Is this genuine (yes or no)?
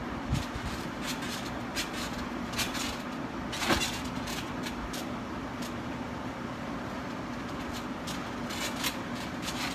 yes